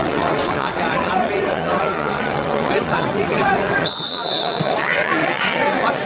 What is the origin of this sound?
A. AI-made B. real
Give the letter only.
A